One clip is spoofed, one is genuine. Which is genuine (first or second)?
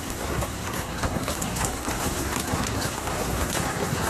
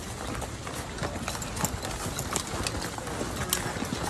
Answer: second